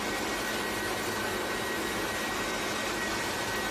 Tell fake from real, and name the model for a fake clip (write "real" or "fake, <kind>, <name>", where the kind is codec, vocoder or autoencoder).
real